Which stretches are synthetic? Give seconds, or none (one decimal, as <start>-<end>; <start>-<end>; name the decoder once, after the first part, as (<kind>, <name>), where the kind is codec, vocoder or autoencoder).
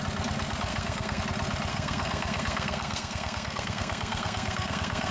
0.7-1.2 (codec, SNAC); 1.7-5.1